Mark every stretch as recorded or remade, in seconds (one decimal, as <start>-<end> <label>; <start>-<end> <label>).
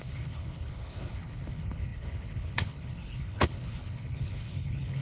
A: 0.0-5.0 remade